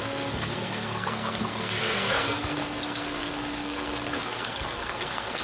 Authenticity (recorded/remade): remade